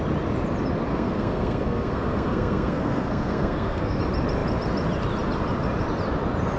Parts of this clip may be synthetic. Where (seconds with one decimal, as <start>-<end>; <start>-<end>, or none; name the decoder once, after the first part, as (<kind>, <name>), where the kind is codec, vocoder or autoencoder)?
0.9-4.0 (codec, SNAC)